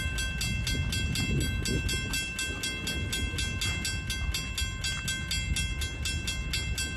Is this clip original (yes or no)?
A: yes